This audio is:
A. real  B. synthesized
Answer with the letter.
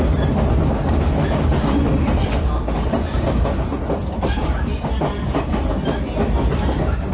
A